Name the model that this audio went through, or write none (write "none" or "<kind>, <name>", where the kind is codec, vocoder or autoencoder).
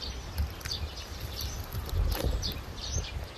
none